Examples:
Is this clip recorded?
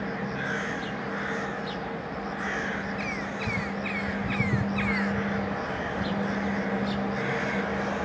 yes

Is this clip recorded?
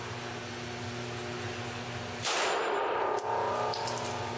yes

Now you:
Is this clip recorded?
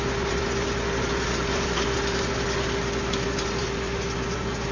yes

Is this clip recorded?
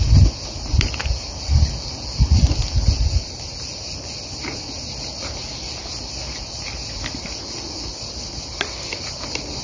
yes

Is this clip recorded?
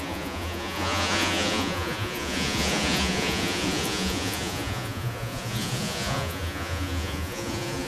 no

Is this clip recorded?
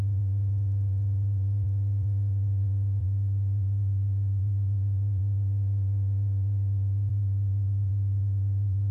no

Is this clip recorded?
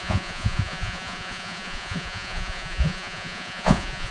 no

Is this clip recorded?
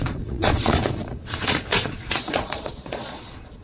no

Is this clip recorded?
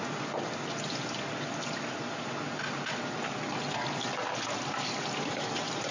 yes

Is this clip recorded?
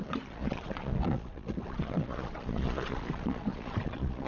no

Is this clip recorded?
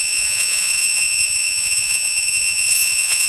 no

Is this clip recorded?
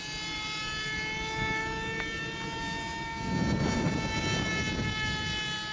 yes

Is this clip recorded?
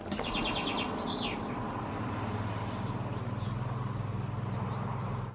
yes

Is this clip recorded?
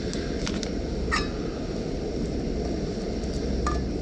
yes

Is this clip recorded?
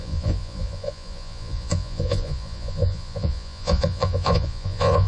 no